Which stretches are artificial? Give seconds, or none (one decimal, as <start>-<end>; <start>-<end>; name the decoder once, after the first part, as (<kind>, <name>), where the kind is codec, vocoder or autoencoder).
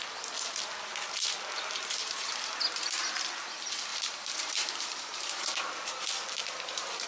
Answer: 2.0-2.6 (vocoder, BigVGAN v2); 3.9-5.7